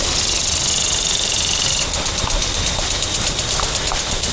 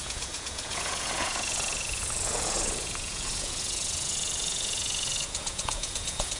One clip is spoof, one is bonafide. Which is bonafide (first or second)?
first